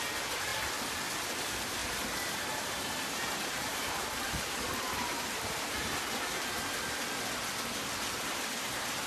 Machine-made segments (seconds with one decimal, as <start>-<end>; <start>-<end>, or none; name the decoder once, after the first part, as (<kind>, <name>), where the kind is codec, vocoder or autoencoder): 1.8-6.8 (vocoder, BigVGAN v2)